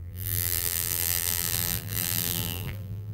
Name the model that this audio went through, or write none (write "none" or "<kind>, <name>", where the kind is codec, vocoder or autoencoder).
vocoder, BigVGAN v2